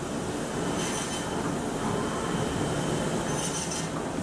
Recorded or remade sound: recorded